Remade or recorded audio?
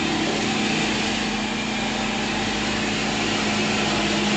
recorded